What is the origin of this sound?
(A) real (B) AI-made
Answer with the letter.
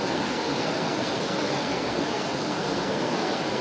B